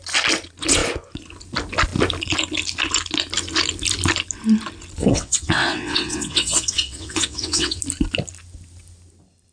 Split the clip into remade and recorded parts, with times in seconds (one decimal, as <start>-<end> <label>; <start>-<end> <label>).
0.0-5.0 recorded; 5.0-7.8 remade; 7.8-9.5 recorded